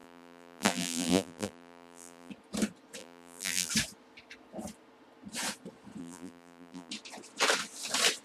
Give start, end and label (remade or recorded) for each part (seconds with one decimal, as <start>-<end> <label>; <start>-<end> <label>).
0.0-2.3 remade; 2.3-3.0 recorded; 3.0-3.7 remade; 3.7-6.0 recorded; 6.0-6.9 remade; 6.9-8.2 recorded